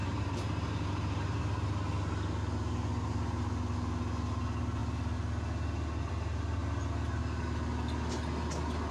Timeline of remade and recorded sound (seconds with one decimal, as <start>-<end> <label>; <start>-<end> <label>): 0.0-1.4 remade; 1.4-8.9 recorded